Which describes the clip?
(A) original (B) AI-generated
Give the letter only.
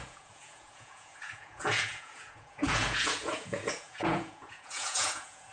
B